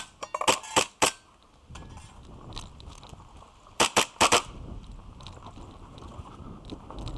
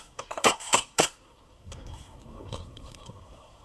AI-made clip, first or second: second